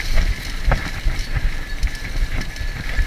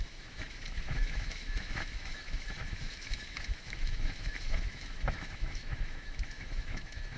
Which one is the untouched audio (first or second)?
first